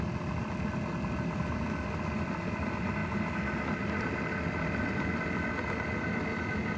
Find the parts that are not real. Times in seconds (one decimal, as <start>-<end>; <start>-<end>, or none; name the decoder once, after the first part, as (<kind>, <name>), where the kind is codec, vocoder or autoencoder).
none